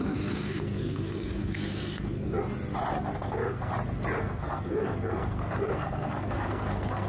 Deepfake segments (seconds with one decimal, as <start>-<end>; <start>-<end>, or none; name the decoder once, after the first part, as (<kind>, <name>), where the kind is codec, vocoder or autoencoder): 0.0-2.4 (codec, SNAC); 3.2-3.7; 4.2-7.1